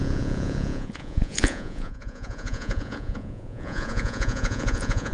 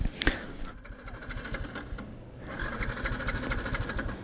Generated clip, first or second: first